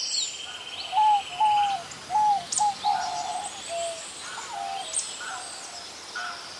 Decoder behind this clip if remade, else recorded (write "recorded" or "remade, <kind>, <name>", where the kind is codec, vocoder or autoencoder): recorded